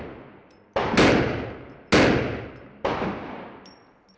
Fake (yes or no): no